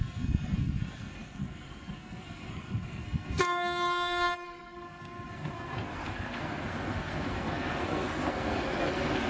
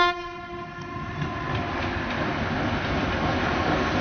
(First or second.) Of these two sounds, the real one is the second